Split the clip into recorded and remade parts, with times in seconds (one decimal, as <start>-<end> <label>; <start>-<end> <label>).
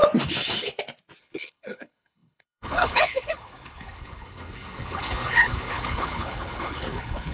0.0-1.2 recorded; 1.2-7.3 remade